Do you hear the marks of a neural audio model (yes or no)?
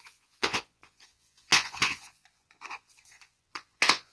yes